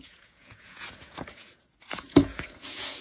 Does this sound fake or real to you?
fake